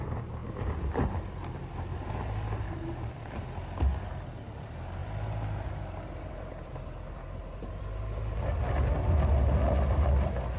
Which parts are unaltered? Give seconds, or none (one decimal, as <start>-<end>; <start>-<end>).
0.0-0.4; 3.4-5.0; 7.8-10.6